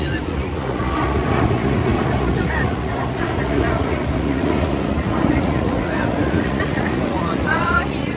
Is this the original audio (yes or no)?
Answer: no